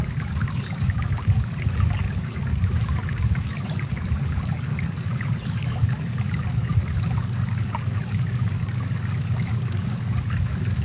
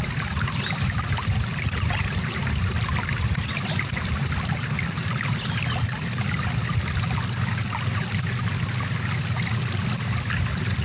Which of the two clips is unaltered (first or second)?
second